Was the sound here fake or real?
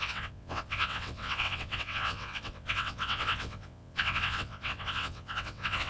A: fake